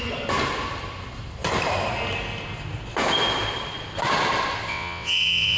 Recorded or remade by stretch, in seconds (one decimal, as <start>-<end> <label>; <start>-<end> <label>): 0.0-4.7 recorded; 4.7-5.6 remade